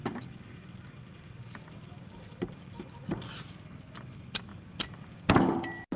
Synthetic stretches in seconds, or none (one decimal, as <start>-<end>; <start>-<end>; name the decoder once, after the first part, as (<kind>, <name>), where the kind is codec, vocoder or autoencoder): none